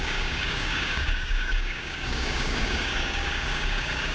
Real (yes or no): no